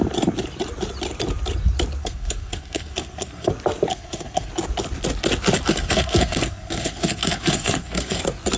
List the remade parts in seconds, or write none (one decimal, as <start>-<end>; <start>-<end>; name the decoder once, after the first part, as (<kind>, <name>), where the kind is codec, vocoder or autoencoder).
2.0-3.5 (codec, SNAC); 3.9-4.5; 5.7-8.2